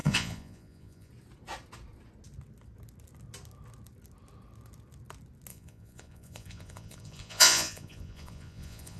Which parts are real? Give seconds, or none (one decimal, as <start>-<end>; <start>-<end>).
1.1-5.5